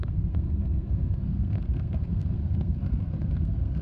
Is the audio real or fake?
fake